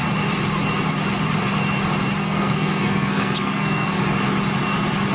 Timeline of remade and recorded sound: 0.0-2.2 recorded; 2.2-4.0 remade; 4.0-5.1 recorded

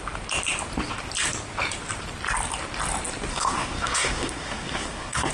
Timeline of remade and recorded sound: 0.0-3.3 recorded; 3.3-5.3 remade

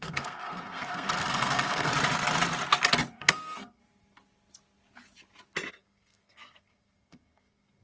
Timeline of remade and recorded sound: 0.0-1.9 remade; 1.9-3.1 recorded; 3.1-3.8 remade; 3.8-5.7 recorded; 5.7-7.8 remade

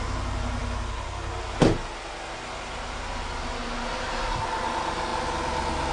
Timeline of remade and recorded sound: 0.0-5.9 recorded

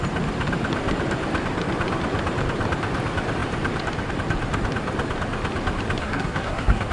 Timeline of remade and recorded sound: 0.0-6.0 recorded; 6.0-6.9 remade

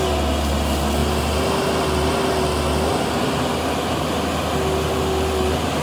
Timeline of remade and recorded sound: 0.0-5.8 recorded